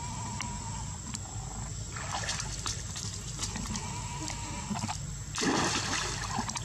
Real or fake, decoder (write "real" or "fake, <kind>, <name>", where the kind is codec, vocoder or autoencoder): real